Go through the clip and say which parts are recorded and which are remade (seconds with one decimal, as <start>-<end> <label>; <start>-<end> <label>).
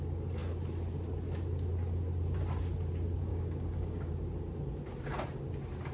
0.0-3.3 recorded; 3.3-4.1 remade; 4.1-5.9 recorded